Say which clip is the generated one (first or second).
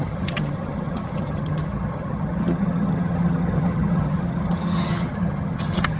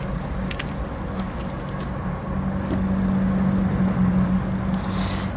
first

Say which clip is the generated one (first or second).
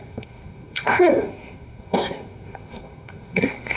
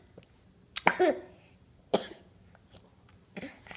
first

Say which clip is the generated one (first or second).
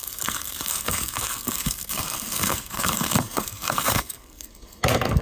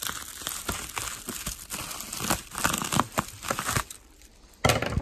first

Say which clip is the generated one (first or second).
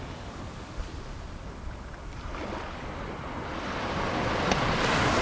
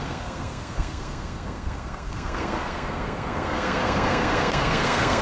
second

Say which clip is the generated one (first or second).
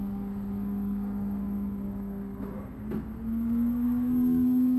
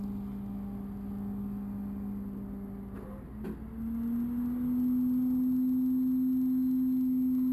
first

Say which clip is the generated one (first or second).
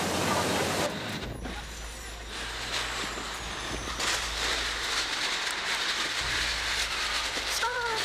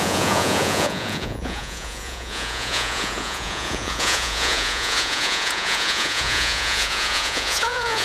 second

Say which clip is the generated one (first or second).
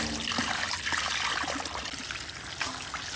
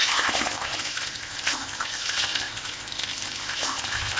second